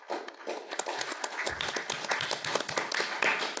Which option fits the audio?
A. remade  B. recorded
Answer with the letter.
B